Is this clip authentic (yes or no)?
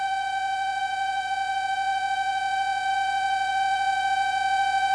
no